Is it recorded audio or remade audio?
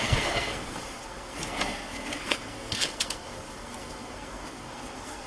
remade